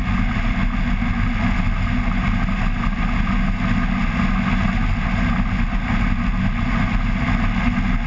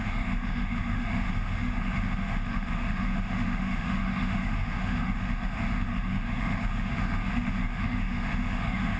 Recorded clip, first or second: first